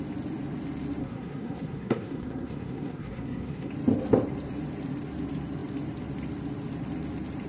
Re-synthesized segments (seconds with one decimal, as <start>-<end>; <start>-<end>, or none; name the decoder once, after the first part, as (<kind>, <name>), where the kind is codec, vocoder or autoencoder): 1.0-3.7 (codec, SNAC)